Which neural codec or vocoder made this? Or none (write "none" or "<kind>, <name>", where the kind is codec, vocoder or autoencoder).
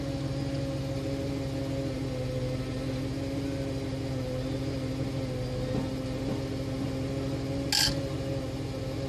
none